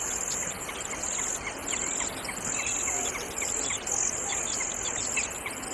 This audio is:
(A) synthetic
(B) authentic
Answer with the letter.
B